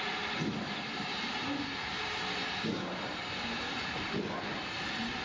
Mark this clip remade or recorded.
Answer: remade